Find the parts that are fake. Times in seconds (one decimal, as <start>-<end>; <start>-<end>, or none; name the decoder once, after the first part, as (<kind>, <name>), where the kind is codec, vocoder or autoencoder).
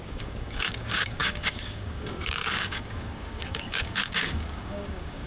0.0-5.3 (codec, DAC)